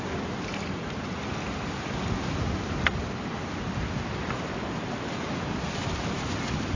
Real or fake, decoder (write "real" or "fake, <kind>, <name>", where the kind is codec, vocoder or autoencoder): real